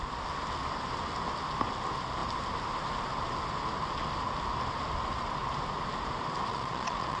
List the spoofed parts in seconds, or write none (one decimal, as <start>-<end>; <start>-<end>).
6.5-7.2